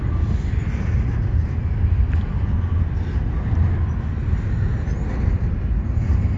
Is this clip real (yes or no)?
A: yes